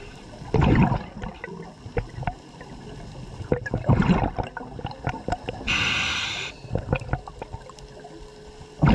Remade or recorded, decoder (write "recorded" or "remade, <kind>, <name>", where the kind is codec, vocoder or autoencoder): recorded